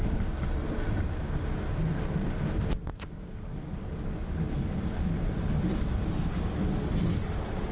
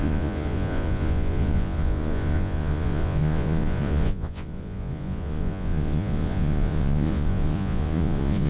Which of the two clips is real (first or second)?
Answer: first